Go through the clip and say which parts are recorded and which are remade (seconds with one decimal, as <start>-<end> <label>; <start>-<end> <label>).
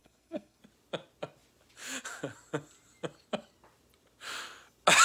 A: 0.0-0.6 remade; 0.6-5.0 recorded